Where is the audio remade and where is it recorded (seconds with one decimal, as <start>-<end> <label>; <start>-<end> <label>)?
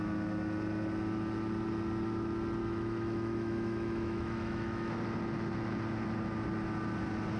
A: 0.0-2.6 recorded; 2.6-4.9 remade; 4.9-7.4 recorded